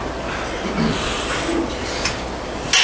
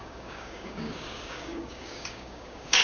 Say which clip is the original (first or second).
first